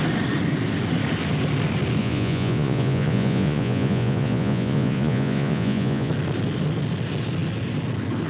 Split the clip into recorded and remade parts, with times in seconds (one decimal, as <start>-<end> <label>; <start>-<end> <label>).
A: 0.0-2.0 recorded; 2.0-6.1 remade; 6.1-8.3 recorded